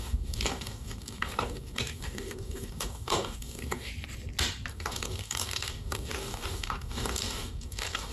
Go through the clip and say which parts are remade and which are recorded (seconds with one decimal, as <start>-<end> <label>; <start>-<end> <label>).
0.0-3.9 remade; 3.9-4.7 recorded; 4.7-8.1 remade